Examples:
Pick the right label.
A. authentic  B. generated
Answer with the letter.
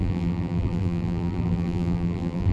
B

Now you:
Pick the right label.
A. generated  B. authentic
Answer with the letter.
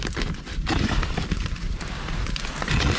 A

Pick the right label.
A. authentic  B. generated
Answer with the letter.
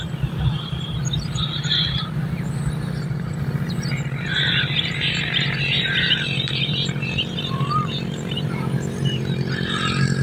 B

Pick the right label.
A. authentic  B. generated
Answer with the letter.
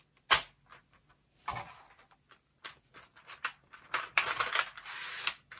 A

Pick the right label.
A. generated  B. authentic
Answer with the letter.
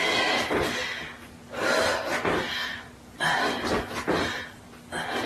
B